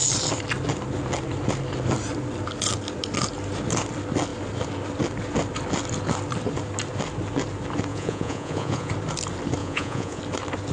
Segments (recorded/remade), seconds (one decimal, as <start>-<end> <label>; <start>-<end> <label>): 0.0-7.9 recorded; 7.9-8.9 remade; 8.9-9.6 recorded; 9.6-10.2 remade; 10.2-10.7 recorded